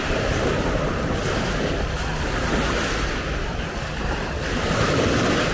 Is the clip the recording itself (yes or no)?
yes